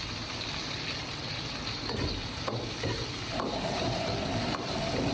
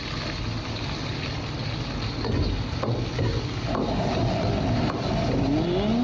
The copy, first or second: first